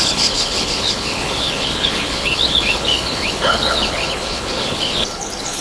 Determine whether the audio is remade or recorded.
remade